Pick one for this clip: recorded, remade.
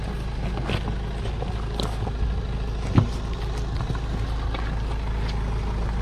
recorded